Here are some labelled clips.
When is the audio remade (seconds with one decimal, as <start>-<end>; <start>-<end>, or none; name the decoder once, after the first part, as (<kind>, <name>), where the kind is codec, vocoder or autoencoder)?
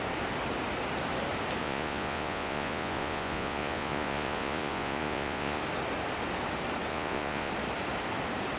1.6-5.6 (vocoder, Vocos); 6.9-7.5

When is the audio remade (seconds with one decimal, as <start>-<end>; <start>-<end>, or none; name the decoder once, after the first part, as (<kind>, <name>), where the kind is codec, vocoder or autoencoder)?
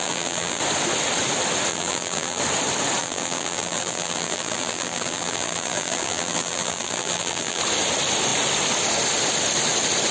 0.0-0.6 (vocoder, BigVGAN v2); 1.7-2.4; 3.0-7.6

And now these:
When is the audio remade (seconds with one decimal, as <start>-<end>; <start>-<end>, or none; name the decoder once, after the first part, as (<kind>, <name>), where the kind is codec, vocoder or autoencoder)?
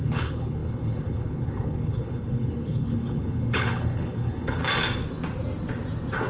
0.0-4.6 (codec, HILCodec)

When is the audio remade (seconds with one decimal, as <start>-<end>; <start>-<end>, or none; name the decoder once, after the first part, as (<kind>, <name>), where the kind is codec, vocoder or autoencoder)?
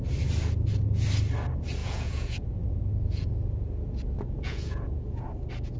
1.8-5.3 (vocoder, Vocos)